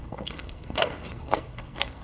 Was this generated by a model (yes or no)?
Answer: yes